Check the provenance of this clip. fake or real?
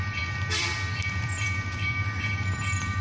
fake